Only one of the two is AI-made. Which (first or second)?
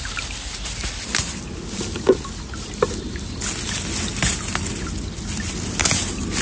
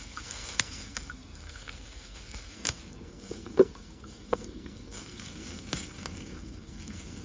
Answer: second